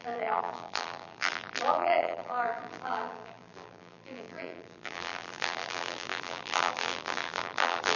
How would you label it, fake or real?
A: fake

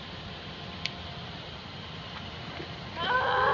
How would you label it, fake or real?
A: real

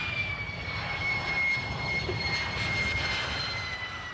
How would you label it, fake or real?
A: fake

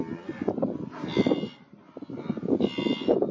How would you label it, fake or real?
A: real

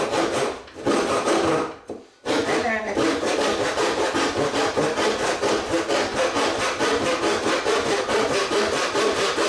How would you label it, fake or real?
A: real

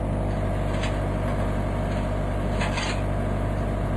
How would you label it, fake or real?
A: real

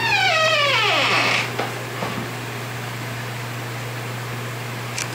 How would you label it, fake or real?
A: real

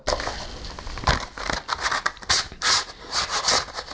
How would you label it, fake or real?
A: real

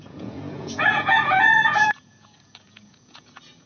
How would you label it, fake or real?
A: fake